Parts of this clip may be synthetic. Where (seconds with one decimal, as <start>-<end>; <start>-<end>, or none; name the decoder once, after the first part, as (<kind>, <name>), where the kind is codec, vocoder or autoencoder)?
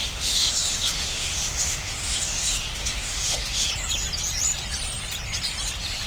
0.0-3.7 (autoencoder, DAC-VAE)